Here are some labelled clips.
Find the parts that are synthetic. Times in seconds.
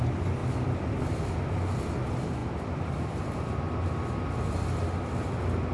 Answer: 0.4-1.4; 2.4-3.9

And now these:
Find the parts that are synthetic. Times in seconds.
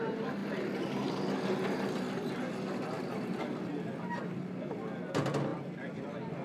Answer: 5.5-6.0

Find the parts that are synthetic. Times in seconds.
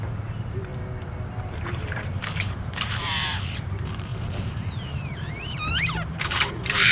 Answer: 0.0-0.7; 1.4-6.9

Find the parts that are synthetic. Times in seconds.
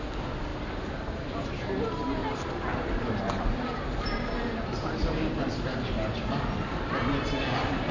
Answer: 0.5-1.2; 2.2-6.9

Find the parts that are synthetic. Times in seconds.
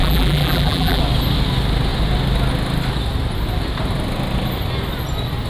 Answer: 0.0-1.0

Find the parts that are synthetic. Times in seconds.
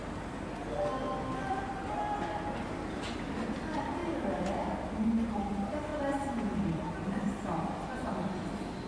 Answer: 1.5-4.0; 5.3-5.9; 6.4-8.9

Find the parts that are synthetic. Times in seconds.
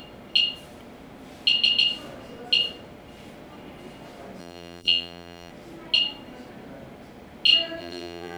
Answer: 4.4-5.5; 7.8-8.4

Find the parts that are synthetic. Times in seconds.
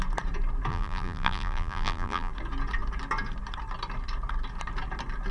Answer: 0.7-2.3